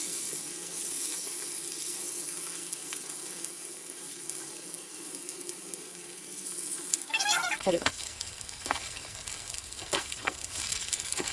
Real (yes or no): no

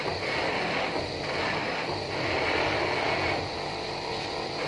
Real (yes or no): yes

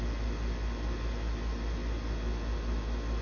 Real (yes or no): yes